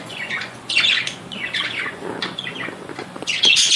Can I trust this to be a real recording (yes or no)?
no